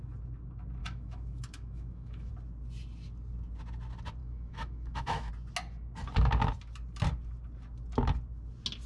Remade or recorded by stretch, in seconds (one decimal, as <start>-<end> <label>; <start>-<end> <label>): 0.0-0.8 recorded; 0.8-2.3 remade; 2.3-4.2 recorded; 4.2-5.3 remade; 5.3-8.9 recorded